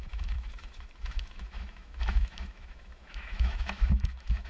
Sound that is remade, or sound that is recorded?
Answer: remade